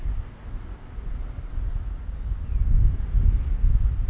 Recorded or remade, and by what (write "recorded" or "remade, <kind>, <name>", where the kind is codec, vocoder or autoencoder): recorded